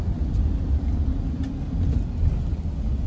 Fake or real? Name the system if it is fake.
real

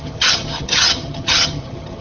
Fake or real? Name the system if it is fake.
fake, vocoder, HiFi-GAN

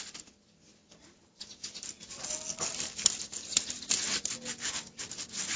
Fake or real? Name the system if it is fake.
real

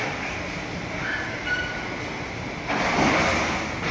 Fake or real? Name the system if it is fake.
real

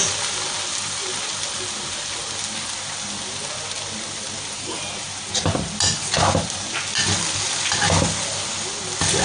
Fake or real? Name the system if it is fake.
real